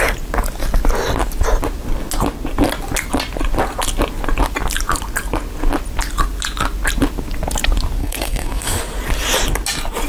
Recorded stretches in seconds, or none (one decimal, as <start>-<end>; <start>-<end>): 0.0-8.0; 8.8-10.1